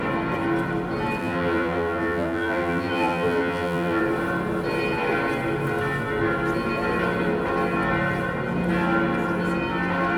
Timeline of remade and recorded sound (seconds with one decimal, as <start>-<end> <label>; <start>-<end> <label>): 0.0-1.2 recorded; 1.2-4.0 remade; 4.0-10.2 recorded